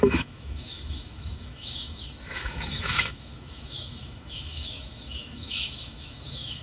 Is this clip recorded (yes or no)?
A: no